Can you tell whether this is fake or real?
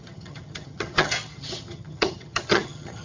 fake